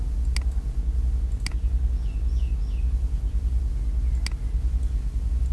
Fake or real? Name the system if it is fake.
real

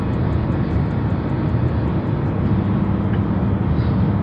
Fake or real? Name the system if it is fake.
real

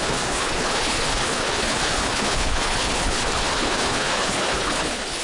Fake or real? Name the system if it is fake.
fake, codec, HILCodec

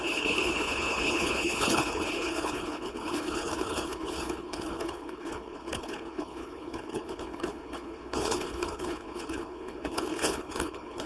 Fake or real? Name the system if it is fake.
fake, codec, HILCodec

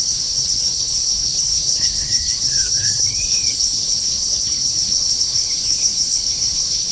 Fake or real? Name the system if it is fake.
fake, codec, HILCodec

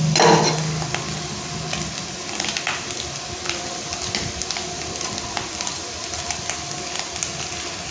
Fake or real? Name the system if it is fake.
real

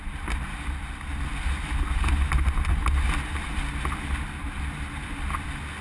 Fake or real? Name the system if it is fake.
real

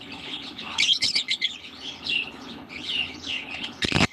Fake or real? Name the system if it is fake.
fake, codec, HILCodec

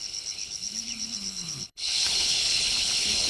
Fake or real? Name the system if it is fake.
fake, codec, HILCodec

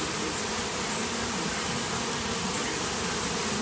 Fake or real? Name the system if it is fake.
real